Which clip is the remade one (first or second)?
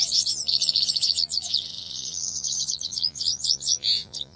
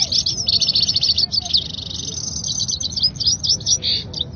first